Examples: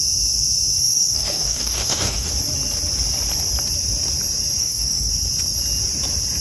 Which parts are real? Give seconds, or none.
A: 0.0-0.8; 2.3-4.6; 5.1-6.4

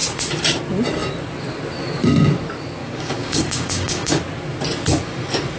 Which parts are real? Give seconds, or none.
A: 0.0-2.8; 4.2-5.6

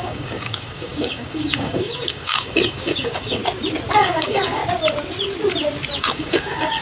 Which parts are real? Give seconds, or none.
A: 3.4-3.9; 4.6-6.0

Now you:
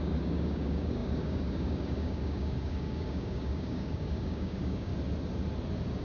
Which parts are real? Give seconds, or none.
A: 4.9-6.0

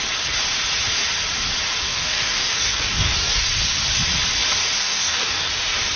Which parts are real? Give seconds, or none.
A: 0.0-1.8; 3.4-4.8; 5.5-6.0